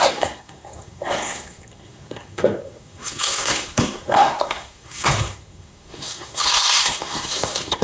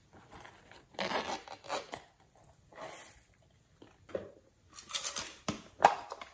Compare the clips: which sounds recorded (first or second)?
second